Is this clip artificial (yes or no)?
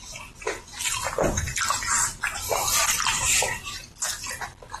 no